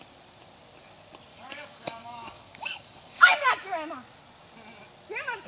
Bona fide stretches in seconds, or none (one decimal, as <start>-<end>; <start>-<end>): 0.0-1.3; 3.5-5.5

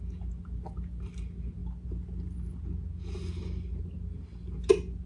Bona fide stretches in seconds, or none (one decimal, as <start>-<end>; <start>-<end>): 0.0-5.1

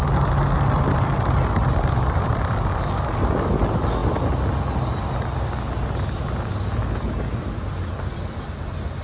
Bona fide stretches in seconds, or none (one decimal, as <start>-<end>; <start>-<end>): 0.0-9.0

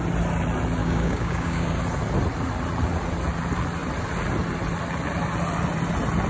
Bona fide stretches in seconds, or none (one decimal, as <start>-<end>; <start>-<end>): 0.0-0.8; 1.8-6.3

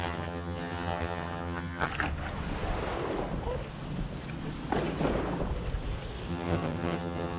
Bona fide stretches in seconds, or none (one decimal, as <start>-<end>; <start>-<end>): 1.9-6.3